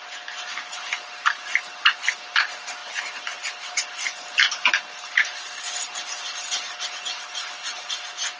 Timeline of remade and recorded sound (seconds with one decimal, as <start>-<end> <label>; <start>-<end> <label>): 0.0-8.4 recorded